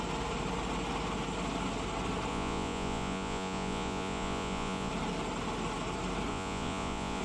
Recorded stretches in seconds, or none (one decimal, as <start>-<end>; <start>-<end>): 0.0-2.3; 4.9-6.3